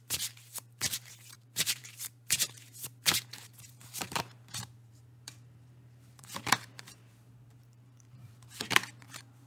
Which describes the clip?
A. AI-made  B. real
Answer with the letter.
A